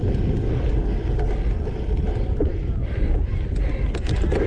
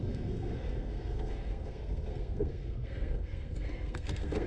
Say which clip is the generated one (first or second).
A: second